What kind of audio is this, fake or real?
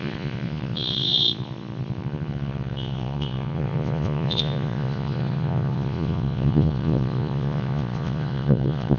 fake